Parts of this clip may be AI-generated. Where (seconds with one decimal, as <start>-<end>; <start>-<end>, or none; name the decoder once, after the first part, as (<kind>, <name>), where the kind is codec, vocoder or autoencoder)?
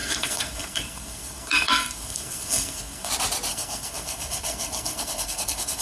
0.0-3.1 (codec, SNAC); 3.5-5.8